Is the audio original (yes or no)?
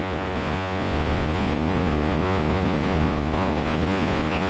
no